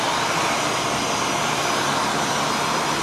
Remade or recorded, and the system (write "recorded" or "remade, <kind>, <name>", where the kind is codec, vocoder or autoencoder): recorded